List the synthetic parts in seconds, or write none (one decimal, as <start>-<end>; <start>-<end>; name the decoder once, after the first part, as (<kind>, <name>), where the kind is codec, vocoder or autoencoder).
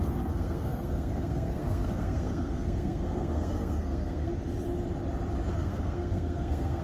0.0-4.3 (codec, SNAC); 5.5-6.8